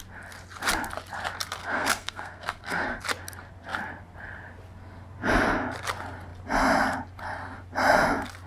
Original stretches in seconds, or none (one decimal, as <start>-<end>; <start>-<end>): 0.0-1.6; 3.0-8.5